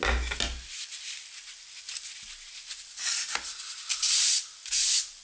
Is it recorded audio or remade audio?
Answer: recorded